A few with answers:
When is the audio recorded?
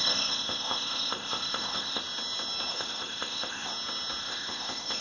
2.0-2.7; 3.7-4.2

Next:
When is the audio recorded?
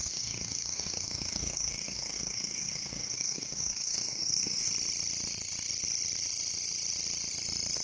4.7-7.8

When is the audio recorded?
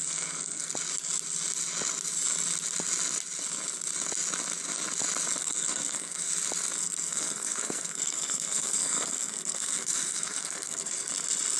0.7-5.4; 6.3-6.8; 11.1-11.6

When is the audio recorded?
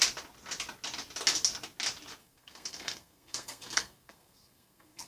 0.0-2.2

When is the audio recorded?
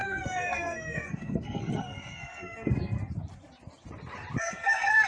3.0-4.4